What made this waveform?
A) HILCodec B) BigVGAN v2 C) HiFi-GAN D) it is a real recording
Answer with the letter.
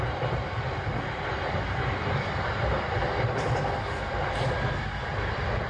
B